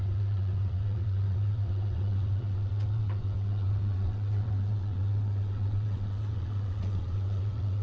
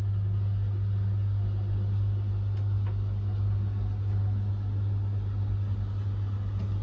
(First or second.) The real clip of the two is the second